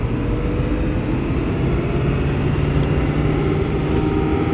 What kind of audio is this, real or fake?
real